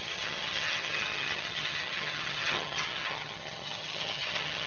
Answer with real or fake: fake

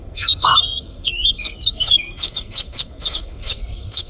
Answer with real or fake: fake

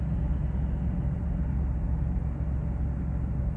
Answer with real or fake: real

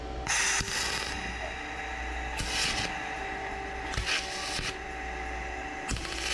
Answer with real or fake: real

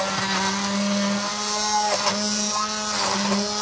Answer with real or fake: real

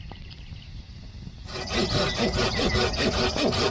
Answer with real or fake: real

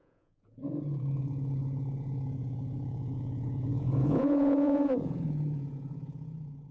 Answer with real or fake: fake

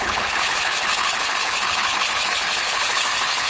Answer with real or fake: fake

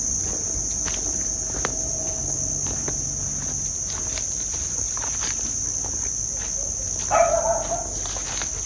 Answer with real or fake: real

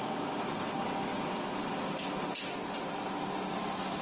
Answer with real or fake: real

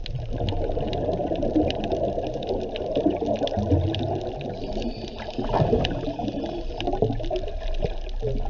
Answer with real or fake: real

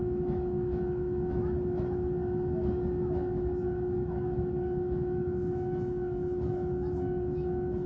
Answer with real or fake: fake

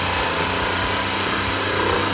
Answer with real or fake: real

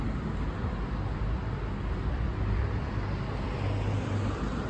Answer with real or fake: real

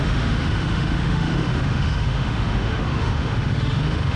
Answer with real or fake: fake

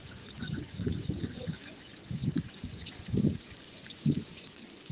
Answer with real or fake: fake